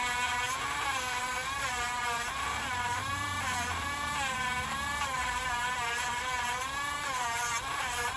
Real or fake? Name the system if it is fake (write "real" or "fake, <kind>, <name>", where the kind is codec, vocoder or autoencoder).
fake, vocoder, BigVGAN v2